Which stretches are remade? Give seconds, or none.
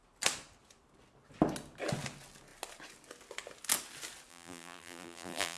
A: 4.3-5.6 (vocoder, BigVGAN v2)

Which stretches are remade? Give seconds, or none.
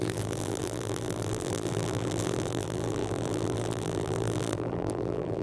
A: 0.0-5.4 (vocoder, BigVGAN v2)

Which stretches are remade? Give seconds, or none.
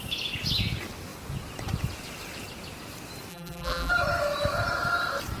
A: 3.3-3.9 (vocoder, BigVGAN v2)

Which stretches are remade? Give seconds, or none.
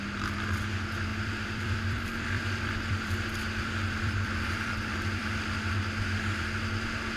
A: 1.1-5.3 (vocoder, BigVGAN v2)